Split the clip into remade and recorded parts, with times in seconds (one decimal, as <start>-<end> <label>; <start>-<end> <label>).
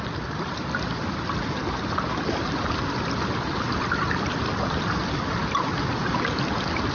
0.0-6.9 recorded